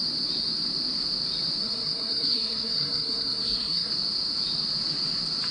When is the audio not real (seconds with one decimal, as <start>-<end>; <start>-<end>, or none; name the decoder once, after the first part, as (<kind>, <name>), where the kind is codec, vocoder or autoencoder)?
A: 1.6-3.9 (codec, SNAC)